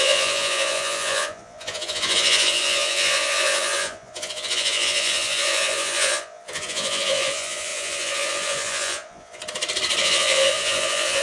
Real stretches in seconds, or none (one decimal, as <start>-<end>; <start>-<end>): 9.4-10.0